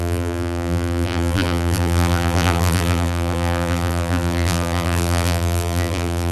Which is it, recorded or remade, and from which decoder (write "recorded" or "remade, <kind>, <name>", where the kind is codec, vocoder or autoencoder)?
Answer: remade, vocoder, BigVGAN v2